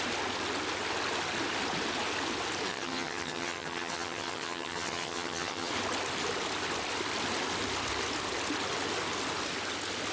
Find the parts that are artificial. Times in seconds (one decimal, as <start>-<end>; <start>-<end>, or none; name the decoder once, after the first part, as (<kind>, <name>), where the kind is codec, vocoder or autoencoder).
2.7-5.7 (vocoder, HiFi-GAN)